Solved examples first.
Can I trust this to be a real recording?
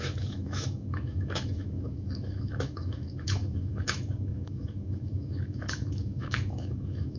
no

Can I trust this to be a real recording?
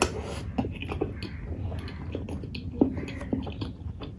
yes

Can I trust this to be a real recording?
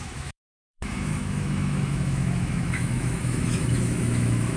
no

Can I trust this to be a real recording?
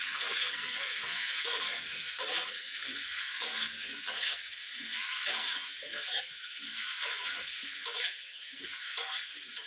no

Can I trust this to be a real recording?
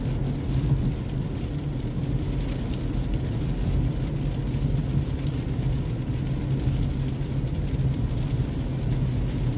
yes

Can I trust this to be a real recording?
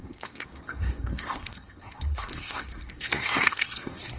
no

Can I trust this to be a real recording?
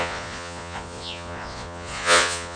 no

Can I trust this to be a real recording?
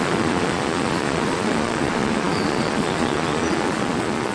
no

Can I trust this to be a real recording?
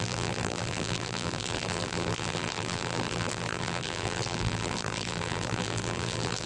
no